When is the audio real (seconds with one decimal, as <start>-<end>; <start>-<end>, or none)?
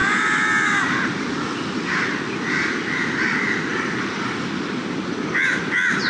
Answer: 0.0-3.7; 5.6-6.1